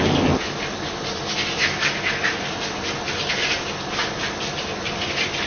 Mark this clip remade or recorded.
recorded